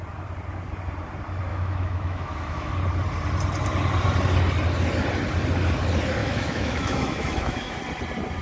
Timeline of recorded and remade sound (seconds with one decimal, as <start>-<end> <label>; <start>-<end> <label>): 0.0-1.5 recorded; 1.5-2.7 remade; 2.7-6.2 recorded; 6.2-7.8 remade; 7.8-8.4 recorded